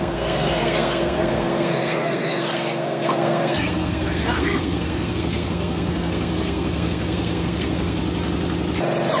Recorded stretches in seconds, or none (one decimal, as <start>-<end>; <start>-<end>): 8.0-9.2